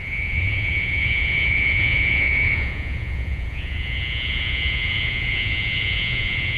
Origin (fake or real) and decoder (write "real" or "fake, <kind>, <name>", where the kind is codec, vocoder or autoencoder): fake, vocoder, Vocos